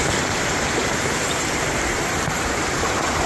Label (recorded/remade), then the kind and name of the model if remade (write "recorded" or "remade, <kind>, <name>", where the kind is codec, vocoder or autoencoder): remade, vocoder, BigVGAN v2